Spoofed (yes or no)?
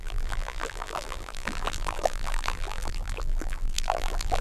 yes